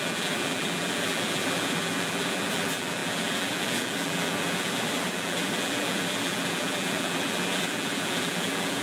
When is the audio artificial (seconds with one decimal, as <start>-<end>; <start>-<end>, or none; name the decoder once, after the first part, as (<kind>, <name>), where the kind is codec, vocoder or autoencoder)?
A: 0.0-8.8 (vocoder, BigVGAN v2)